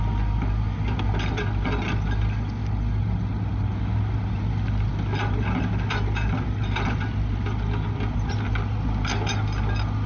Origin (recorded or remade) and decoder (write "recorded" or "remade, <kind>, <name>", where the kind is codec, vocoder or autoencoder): recorded